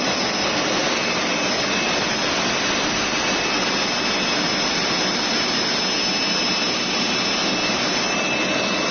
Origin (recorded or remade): recorded